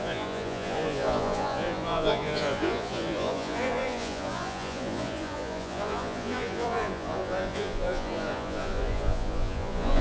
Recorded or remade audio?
remade